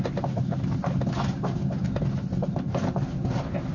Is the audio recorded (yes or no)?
yes